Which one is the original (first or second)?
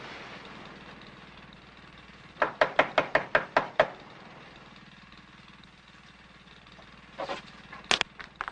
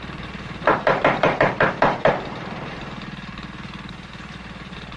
first